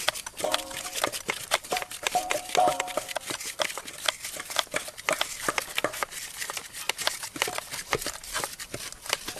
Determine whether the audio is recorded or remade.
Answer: remade